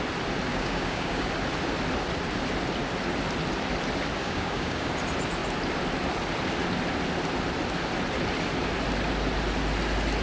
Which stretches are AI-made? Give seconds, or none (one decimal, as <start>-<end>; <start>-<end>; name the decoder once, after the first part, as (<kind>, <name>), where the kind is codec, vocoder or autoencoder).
0.5-1.3 (codec, DAC); 4.2-4.9